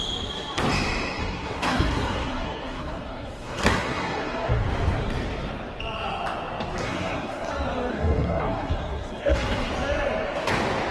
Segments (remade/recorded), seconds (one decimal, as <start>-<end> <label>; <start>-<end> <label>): 0.0-1.2 recorded; 1.2-4.6 remade; 4.6-6.8 recorded; 6.8-7.5 remade; 7.5-7.9 recorded; 7.9-9.7 remade; 9.7-10.9 recorded